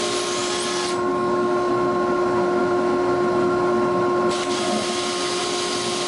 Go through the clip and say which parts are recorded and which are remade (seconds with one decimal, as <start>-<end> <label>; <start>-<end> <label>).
0.0-1.1 recorded; 1.1-1.7 remade; 1.7-6.1 recorded